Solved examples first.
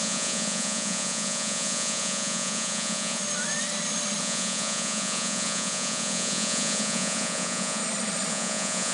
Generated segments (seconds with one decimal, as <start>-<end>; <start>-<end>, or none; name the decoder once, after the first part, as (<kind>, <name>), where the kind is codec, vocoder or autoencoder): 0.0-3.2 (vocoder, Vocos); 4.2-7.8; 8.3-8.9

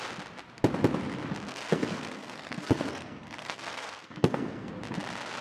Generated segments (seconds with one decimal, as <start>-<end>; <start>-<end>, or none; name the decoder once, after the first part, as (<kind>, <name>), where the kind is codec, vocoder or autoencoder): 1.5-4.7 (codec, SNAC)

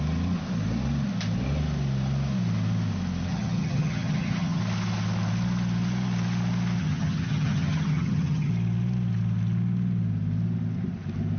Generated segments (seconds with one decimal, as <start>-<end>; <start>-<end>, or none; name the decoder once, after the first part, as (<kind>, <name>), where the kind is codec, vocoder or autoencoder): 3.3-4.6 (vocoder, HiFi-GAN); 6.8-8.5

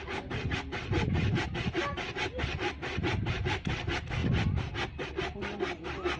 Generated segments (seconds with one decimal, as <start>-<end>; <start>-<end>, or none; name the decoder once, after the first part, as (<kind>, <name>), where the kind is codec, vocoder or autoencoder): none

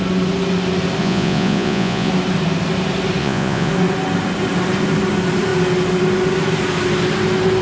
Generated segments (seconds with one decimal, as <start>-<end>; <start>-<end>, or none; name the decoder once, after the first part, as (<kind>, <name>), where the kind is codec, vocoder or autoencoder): 1.0-2.1 (vocoder, Vocos); 3.2-3.7